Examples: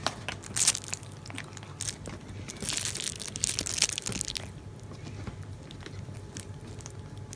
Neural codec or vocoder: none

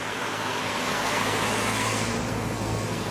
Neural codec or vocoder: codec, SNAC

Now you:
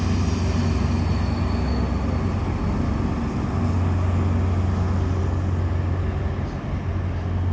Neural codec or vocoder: none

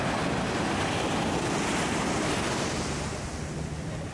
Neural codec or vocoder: none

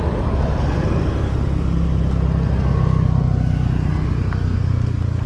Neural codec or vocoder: none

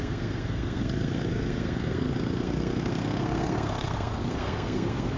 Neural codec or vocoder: codec, SNAC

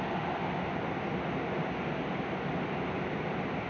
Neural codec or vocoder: none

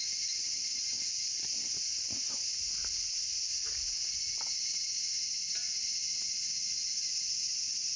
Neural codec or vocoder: none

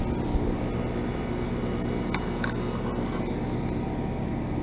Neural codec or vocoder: none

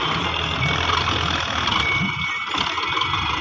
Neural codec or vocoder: none